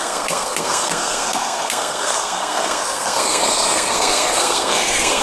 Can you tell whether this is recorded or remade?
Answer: remade